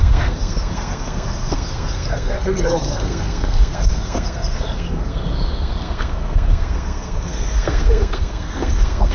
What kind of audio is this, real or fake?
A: fake